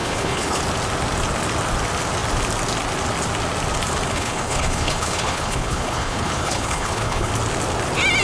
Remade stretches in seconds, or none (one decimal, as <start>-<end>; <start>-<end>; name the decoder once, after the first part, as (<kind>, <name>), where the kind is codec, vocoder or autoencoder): 0.0-0.6 (codec, HILCodec); 4.1-7.3